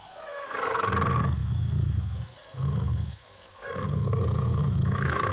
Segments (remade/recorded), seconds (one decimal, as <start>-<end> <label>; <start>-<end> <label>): 0.0-1.4 recorded; 1.4-2.0 remade; 2.0-4.6 recorded; 4.6-5.3 remade